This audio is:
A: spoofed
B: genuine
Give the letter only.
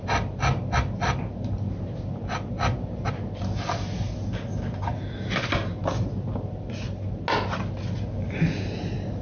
B